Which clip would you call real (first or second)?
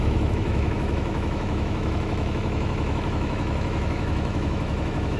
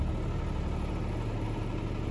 second